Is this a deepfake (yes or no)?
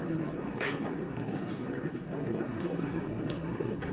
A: yes